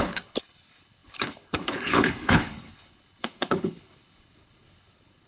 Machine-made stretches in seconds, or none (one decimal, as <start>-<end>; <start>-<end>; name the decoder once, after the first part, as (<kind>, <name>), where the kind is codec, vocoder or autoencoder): 0.0-5.3 (codec, HILCodec)